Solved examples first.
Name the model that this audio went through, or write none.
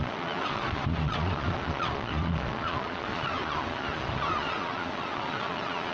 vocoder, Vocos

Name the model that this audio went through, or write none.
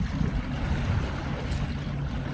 none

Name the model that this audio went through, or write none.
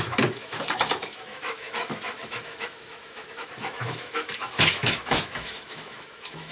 autoencoder, DAC-VAE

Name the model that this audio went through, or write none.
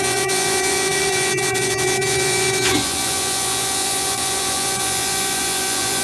vocoder, Vocos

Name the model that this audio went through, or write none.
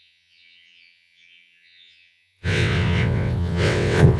vocoder, WaveNeXt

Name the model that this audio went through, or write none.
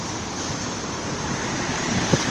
vocoder, BigVGAN v2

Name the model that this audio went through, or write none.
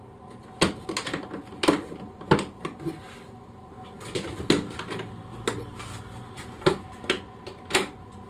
none